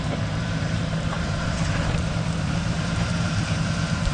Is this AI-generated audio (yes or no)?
yes